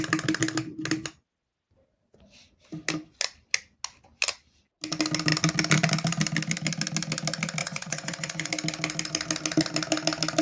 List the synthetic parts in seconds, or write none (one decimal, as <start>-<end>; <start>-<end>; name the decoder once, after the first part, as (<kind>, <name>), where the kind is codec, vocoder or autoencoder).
7.6-8.5 (vocoder, Vocos)